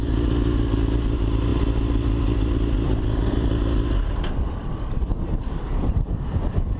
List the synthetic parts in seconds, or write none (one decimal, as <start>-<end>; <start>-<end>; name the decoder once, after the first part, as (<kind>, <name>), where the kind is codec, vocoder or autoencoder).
none